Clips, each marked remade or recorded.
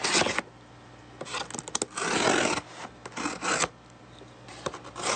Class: recorded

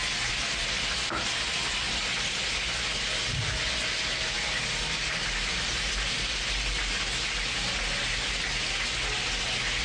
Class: recorded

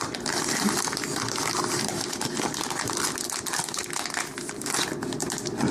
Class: recorded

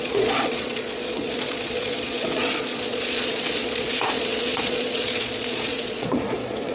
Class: remade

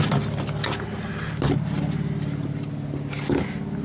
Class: recorded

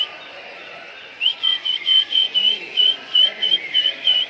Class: remade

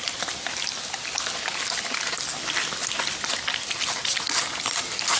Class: recorded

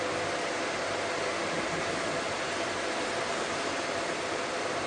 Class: recorded